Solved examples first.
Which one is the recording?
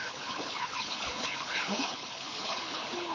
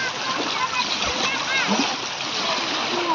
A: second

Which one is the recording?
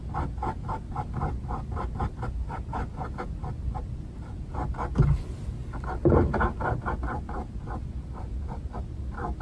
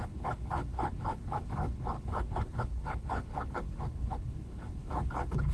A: first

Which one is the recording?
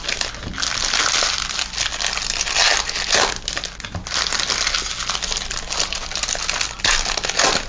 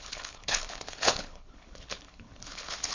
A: first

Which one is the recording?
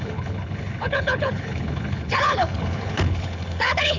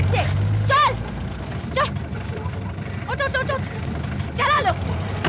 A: second